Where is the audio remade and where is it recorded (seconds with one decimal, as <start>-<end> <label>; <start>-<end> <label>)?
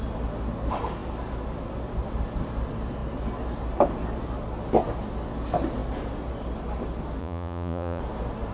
0.0-7.2 recorded; 7.2-8.0 remade; 8.0-8.5 recorded